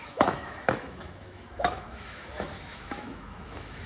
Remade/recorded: remade